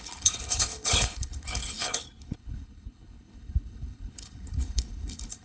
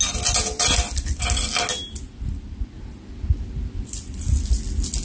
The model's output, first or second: first